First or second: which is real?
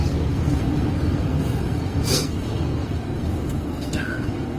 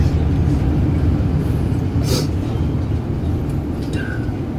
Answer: second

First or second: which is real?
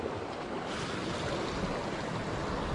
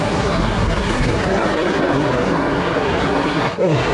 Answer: first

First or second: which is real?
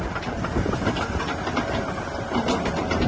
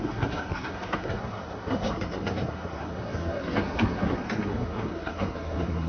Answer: first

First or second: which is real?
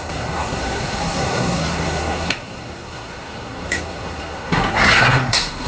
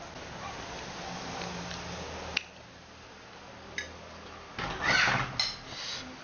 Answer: second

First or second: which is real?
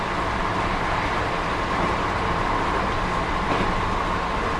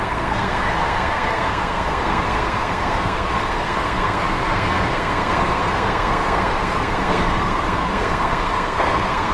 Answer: first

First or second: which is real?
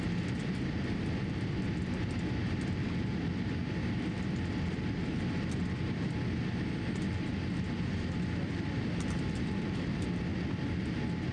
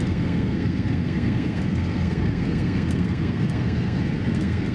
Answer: first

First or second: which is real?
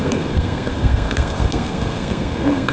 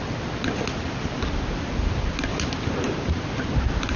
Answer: second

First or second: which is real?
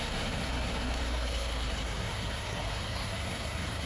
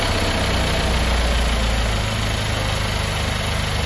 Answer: second